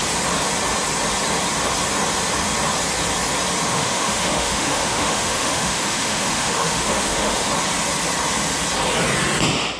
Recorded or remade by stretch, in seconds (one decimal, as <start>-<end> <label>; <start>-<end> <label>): 0.0-3.7 recorded; 3.7-7.5 remade; 7.5-9.8 recorded